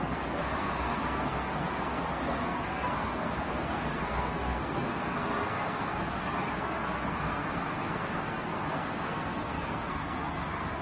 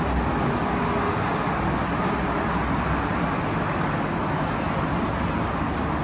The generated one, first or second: first